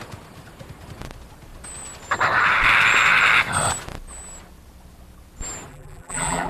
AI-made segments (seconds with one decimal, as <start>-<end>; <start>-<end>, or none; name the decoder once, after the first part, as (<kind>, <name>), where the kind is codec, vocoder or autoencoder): 5.7-6.5 (vocoder, BigVGAN v2)